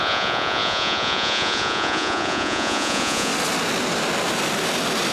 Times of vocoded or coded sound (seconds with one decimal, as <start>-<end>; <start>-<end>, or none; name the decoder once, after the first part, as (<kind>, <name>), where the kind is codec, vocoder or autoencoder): 0.0-3.3 (vocoder, Vocos)

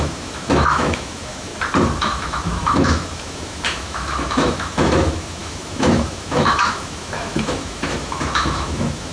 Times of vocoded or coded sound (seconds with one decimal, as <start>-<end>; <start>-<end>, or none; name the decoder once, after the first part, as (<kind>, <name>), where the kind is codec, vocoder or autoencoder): 0.0-1.5 (autoencoder, DAC-VAE); 2.0-9.1

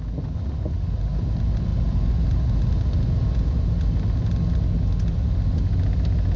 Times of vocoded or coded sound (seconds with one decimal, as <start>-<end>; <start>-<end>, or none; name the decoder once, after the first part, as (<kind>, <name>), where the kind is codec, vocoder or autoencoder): none